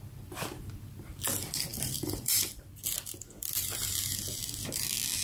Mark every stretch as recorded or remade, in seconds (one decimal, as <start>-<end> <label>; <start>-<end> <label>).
0.0-1.7 recorded; 1.7-4.8 remade; 4.8-5.2 recorded